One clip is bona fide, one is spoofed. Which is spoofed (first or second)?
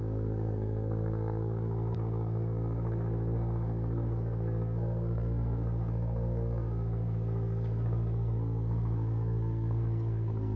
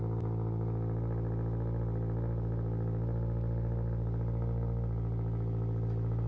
first